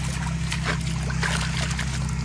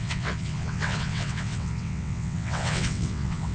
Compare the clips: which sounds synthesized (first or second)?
second